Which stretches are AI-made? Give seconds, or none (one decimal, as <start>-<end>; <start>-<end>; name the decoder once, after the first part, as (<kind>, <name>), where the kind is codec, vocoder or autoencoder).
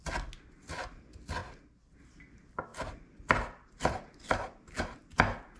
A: none